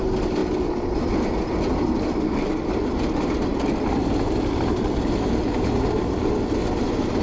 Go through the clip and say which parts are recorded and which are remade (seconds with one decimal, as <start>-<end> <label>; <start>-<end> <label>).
0.0-7.2 recorded